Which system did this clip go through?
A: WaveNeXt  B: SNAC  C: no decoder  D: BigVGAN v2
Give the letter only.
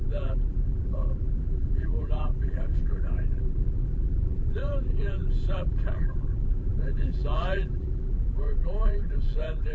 D